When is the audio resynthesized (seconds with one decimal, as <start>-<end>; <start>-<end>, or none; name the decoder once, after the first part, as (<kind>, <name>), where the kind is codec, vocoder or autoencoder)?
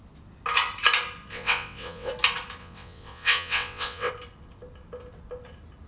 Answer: 1.3-2.1 (vocoder, WaveNeXt); 2.6-4.1